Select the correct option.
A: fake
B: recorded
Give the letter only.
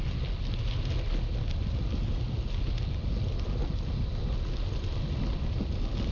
B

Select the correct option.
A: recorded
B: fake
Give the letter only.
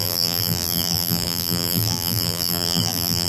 B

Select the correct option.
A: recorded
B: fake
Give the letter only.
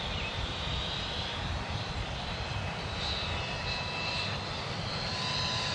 B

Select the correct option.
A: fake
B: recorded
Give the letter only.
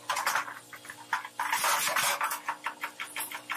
B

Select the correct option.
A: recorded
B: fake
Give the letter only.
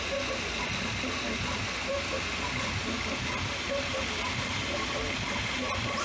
B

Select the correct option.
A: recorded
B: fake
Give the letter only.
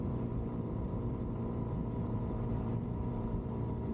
B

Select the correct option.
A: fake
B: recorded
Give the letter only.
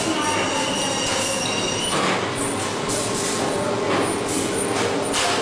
B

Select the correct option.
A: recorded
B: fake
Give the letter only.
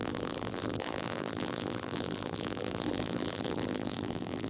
B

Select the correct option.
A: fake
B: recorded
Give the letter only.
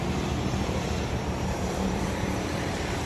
A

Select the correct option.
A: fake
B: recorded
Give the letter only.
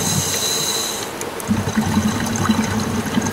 B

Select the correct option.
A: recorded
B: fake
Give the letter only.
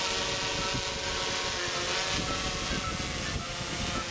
A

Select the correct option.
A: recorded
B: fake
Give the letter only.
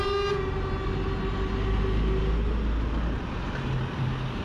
A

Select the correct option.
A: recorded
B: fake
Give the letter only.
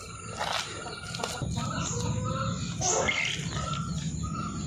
A